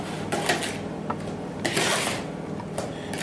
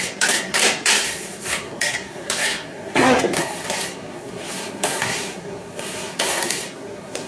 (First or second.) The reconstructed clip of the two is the second